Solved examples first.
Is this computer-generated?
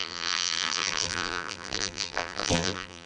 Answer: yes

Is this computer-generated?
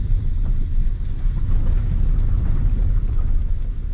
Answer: no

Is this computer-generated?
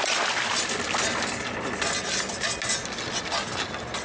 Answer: no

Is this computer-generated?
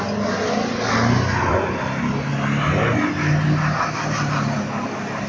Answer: no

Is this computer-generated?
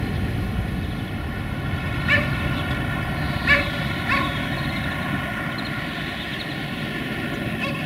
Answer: no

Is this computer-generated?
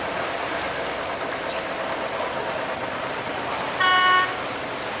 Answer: no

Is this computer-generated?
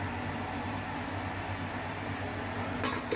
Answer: no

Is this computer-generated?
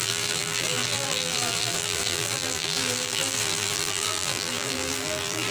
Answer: yes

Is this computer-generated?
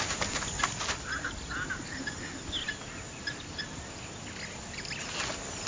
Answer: no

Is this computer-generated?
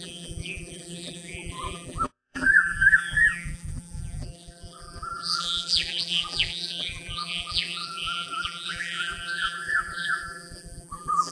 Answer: yes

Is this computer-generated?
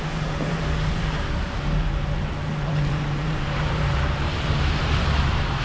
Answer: yes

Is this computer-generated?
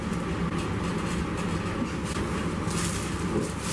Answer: no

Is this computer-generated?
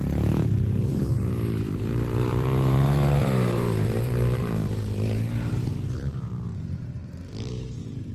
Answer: yes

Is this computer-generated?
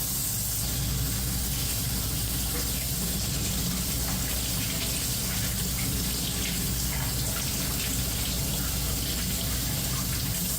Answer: no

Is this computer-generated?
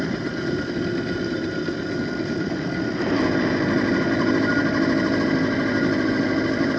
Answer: no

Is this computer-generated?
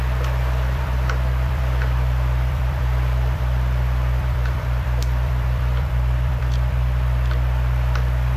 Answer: yes